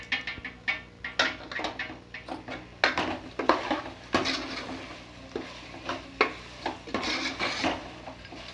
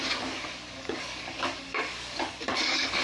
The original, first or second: first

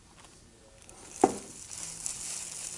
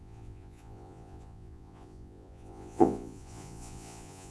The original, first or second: first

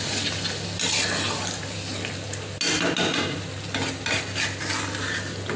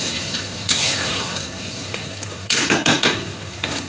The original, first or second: first